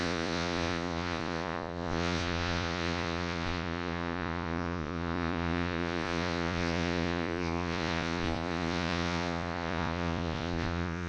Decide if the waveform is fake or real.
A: fake